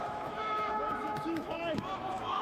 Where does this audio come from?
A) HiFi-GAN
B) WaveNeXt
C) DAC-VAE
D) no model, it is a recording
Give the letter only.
C